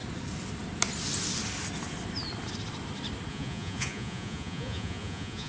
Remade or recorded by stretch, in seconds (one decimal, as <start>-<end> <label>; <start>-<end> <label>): 0.0-3.3 recorded; 3.3-5.5 remade